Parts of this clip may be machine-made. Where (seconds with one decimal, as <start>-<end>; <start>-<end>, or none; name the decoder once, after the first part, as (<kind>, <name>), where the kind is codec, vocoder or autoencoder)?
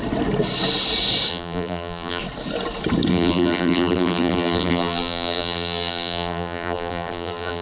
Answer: 1.3-2.2 (vocoder, BigVGAN v2); 3.1-7.6